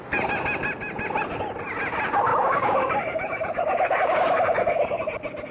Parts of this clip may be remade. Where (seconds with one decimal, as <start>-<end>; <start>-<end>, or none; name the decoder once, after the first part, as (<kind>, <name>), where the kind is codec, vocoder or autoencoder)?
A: 2.3-5.0 (codec, DAC)